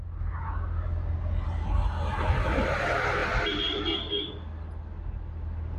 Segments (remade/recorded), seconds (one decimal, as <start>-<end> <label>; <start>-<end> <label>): 0.0-5.8 recorded